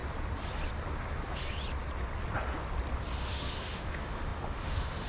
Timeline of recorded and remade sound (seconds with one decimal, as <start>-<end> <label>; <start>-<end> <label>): 0.0-3.1 recorded; 3.1-5.1 remade